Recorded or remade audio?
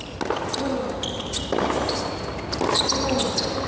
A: recorded